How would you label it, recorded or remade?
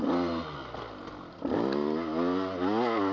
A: recorded